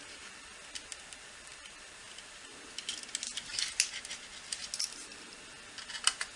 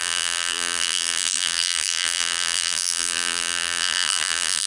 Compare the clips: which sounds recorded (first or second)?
first